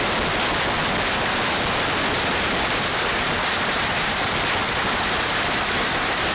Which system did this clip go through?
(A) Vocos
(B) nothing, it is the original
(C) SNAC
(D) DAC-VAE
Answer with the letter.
B